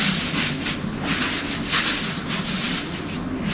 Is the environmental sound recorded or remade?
recorded